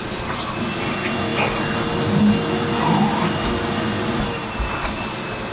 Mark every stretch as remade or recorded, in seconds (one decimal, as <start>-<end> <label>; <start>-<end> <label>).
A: 0.0-5.5 recorded